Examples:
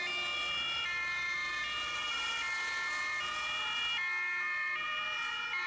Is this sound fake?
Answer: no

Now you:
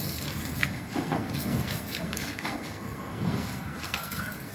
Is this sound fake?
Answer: yes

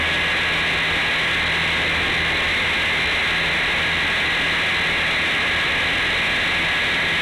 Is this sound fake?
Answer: no